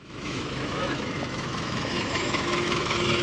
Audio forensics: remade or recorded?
remade